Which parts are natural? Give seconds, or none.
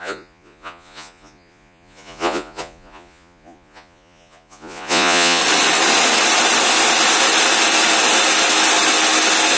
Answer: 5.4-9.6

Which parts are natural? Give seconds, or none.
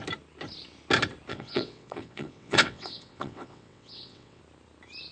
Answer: 0.0-1.3; 4.4-5.1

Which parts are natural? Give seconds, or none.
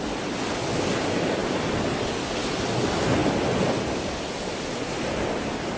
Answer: 0.0-5.8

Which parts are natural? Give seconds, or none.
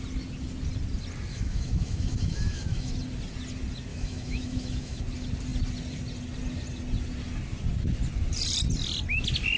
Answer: 0.0-1.3; 2.9-3.9; 5.0-9.6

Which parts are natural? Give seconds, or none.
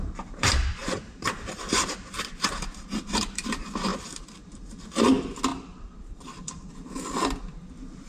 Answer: 0.0-0.8; 3.5-3.9; 4.8-5.5; 6.7-8.1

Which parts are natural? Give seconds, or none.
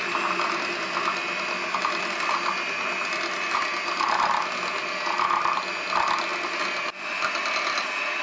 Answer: 0.0-8.2